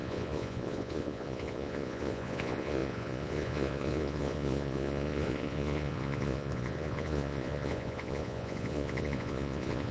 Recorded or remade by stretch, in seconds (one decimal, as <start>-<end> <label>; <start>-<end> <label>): 0.0-9.9 remade